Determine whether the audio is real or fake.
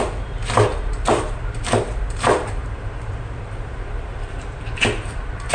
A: fake